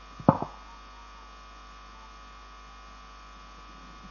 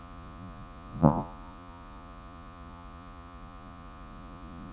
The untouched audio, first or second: first